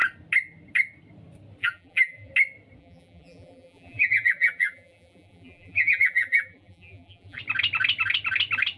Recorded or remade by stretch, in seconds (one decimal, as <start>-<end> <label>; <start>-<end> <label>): 0.0-1.6 recorded; 1.6-2.3 remade; 2.3-2.8 recorded; 2.8-7.4 remade; 7.4-8.8 recorded